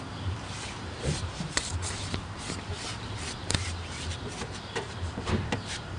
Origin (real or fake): fake